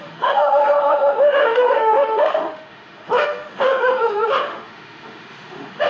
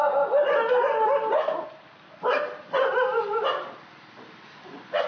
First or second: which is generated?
first